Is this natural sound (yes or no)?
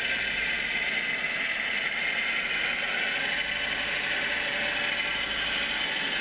yes